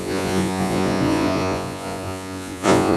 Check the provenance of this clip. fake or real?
fake